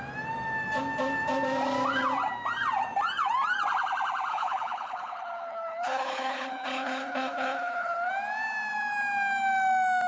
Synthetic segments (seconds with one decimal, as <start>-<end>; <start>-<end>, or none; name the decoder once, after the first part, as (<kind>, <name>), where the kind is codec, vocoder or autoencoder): 4.3-8.1 (codec, HILCodec)